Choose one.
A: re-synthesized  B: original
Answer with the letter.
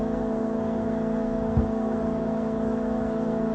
A